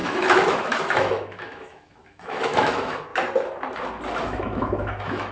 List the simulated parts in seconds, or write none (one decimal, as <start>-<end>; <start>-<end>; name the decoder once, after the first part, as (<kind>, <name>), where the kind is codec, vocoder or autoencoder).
0.0-3.1 (autoencoder, DAC-VAE); 4.2-5.3